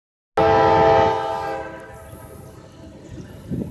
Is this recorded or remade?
recorded